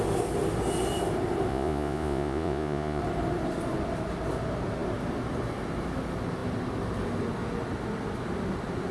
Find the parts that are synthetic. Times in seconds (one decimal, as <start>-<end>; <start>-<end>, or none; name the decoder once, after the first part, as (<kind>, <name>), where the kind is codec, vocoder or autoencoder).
1.5-3.0 (vocoder, Vocos)